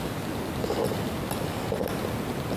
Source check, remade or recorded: recorded